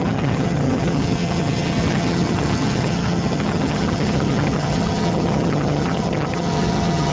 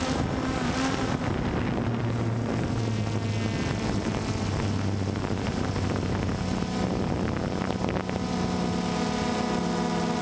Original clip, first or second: second